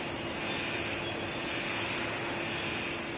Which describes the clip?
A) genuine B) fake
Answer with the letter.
A